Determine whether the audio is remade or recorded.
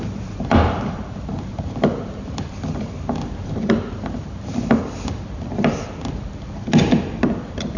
remade